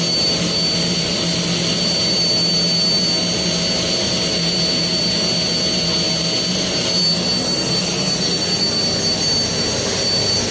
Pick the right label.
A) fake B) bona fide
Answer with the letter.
B